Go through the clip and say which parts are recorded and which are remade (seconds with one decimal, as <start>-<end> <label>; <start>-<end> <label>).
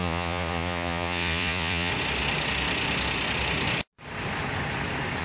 0.0-1.9 remade; 1.9-5.2 recorded